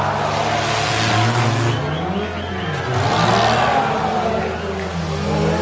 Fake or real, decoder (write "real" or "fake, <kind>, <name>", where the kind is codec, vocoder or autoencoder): real